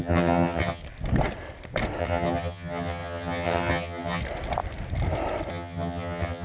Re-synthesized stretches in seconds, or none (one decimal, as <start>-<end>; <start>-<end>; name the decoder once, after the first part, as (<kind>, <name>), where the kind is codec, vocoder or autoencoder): 0.0-0.8 (vocoder, HiFi-GAN); 2.0-4.2; 5.5-6.4